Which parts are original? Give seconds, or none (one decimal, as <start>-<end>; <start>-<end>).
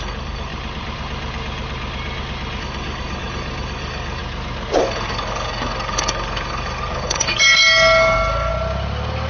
0.5-2.6; 4.2-4.8; 8.5-9.3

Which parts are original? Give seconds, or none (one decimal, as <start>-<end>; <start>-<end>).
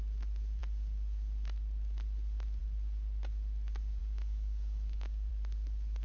0.0-4.0; 5.3-6.0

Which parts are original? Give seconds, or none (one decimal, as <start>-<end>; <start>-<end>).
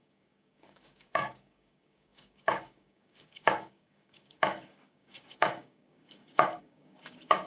none